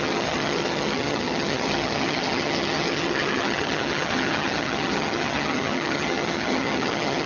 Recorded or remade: remade